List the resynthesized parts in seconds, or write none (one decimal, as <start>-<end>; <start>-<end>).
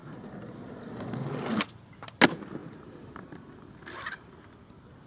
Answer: 0.0-1.6; 2.6-4.3